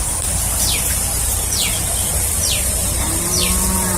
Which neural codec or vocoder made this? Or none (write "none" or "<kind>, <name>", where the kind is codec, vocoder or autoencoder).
vocoder, BigVGAN v2